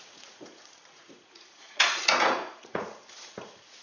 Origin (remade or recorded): remade